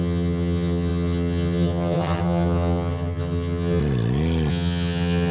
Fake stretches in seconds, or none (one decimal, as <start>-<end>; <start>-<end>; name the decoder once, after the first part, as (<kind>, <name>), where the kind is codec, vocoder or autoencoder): 0.0-3.8 (vocoder, HiFi-GAN); 4.5-5.3